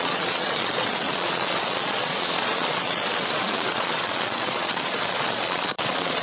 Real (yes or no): no